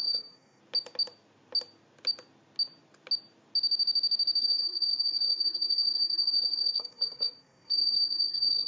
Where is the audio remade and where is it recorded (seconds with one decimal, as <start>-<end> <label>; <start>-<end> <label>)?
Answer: 0.0-0.6 remade; 0.6-4.4 recorded; 4.4-8.7 remade